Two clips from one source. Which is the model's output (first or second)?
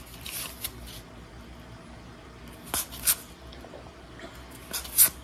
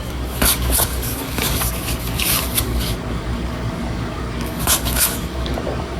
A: second